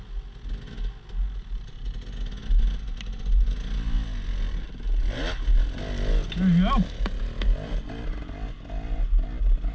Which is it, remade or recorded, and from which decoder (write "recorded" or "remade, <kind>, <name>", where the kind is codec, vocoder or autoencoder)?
recorded